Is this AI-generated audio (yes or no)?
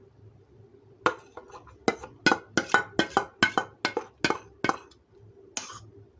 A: no